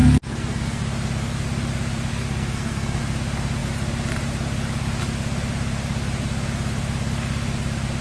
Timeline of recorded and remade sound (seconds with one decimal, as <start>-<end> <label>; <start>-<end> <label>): 0.0-0.8 remade; 0.8-2.1 recorded; 2.1-3.0 remade; 3.0-8.0 recorded